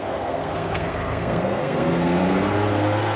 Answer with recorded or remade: remade